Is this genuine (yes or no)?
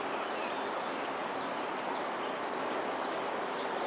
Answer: yes